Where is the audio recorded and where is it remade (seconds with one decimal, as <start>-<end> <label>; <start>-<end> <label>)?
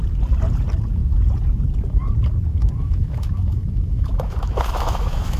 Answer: 0.0-2.5 recorded; 2.5-5.4 remade